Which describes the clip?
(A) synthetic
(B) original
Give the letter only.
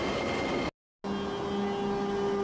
B